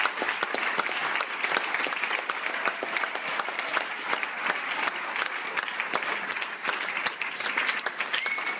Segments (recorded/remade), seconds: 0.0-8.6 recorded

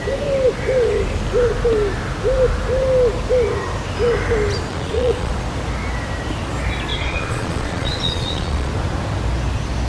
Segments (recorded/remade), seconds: 0.0-4.7 recorded; 4.7-5.3 remade; 5.3-6.9 recorded; 6.9-8.7 remade; 8.7-9.9 recorded